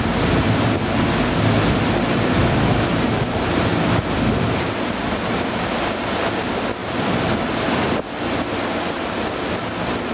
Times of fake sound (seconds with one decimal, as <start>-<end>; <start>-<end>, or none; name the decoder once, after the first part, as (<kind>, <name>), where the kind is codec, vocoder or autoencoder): none